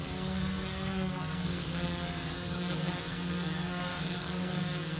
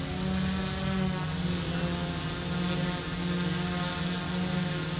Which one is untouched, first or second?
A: second